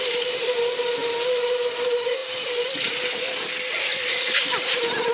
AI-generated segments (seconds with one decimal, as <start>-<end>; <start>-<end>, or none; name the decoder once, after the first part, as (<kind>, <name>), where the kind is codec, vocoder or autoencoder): none